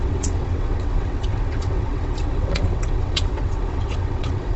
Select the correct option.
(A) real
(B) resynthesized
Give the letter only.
B